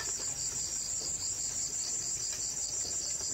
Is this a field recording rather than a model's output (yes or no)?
no